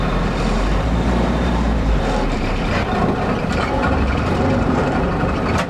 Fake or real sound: fake